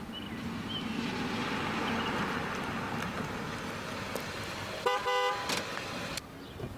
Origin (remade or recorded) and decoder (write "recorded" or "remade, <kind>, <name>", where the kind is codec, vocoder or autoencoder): recorded